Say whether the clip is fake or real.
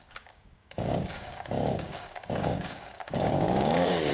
fake